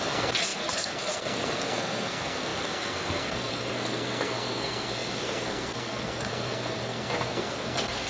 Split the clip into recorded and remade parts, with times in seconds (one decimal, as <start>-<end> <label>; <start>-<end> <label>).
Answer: 0.0-8.1 remade